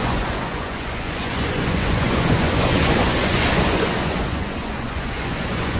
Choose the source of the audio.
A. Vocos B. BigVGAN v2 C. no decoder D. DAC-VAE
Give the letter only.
A